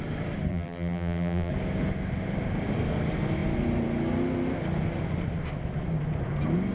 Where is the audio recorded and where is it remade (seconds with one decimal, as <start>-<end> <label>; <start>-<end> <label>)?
0.0-0.5 recorded; 0.5-1.5 remade; 1.5-6.7 recorded